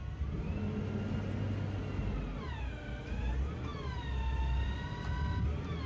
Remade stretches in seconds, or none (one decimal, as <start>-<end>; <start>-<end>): none